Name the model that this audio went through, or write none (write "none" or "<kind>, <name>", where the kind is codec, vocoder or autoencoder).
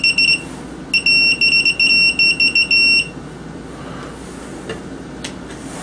none